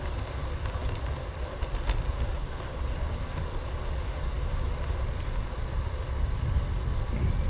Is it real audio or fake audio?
real